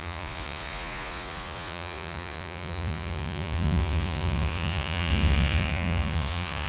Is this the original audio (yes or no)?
no